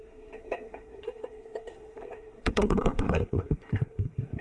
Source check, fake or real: fake